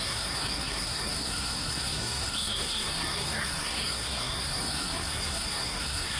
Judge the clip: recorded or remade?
remade